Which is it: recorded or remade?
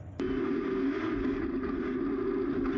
recorded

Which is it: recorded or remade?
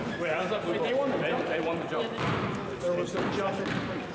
recorded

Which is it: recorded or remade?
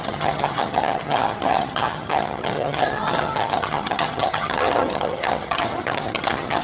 remade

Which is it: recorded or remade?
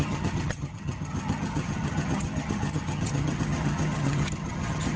remade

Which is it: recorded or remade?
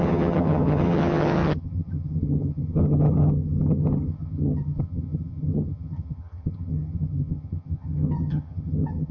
remade